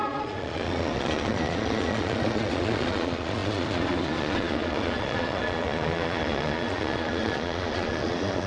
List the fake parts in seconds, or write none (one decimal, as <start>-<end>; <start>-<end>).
0.0-8.5